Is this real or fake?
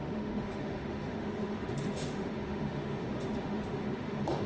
fake